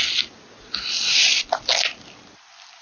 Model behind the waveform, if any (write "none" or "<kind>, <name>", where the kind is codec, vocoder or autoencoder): none